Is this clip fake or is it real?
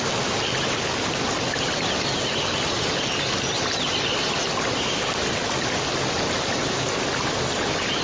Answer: real